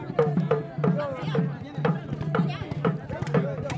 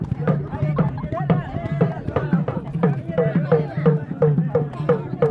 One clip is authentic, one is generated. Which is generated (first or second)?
second